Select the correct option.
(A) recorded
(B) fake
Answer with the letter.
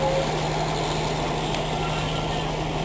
A